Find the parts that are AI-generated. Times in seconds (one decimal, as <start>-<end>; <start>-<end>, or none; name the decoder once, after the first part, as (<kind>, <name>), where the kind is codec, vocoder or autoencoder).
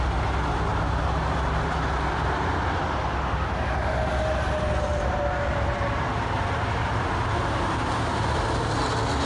none